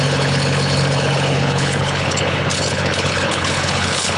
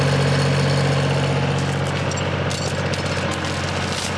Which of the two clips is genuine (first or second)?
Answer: second